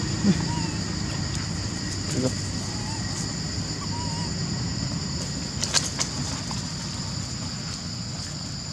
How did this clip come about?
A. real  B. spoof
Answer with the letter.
A